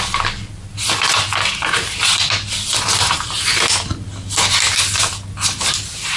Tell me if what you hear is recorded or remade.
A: recorded